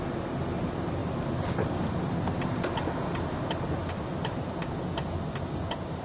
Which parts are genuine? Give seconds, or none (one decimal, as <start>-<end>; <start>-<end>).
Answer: 0.0-6.0

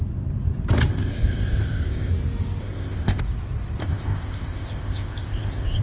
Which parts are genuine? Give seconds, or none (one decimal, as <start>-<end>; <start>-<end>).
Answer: 0.0-0.9; 2.1-2.6; 3.2-3.8

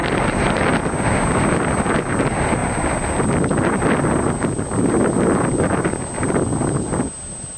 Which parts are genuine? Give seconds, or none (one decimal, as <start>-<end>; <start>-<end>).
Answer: 0.0-7.6

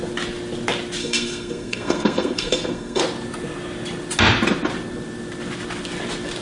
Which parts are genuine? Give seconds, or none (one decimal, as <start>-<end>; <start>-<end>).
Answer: 0.0-1.0; 3.0-6.4

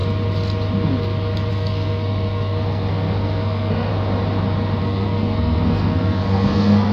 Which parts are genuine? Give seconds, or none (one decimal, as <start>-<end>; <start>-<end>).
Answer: 0.0-1.5; 3.9-4.8

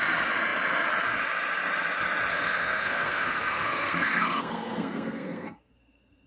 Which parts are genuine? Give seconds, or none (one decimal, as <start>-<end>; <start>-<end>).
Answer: 0.0-2.3